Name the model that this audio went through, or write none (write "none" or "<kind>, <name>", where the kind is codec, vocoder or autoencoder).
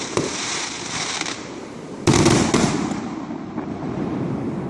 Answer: vocoder, BigVGAN v2